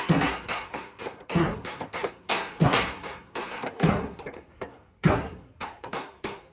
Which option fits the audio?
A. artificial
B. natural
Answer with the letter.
A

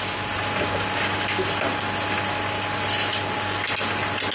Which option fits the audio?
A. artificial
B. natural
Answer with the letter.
B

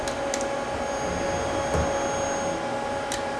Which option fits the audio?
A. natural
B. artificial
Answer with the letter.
A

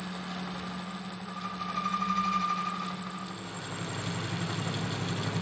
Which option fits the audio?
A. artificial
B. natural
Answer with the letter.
B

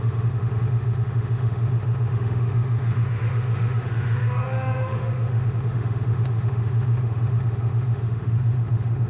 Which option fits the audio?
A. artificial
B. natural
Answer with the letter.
A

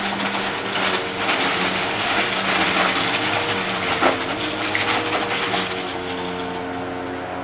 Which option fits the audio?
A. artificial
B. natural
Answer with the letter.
B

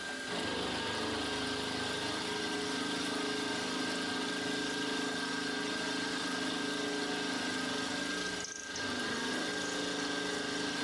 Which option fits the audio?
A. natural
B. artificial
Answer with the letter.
A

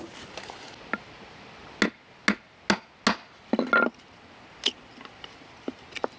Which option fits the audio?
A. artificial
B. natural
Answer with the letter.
B